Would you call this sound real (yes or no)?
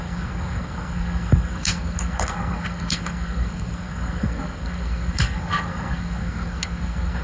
no